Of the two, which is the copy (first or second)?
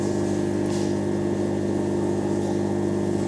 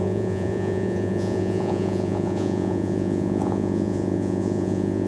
second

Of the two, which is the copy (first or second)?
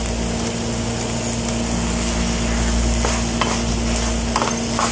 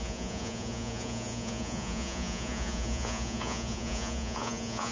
second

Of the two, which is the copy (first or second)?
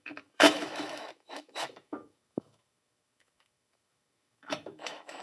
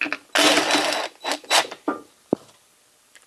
first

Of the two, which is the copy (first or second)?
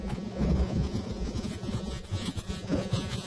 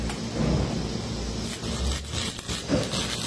first